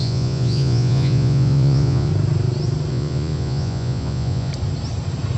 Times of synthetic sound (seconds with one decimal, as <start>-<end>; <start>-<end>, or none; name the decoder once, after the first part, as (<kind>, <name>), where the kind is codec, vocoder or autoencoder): 0.0-2.1 (vocoder, Vocos); 2.9-4.5